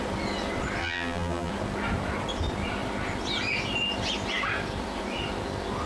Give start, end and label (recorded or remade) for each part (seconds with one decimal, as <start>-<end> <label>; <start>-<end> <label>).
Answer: 0.0-0.8 recorded; 0.8-1.5 remade; 1.5-5.9 recorded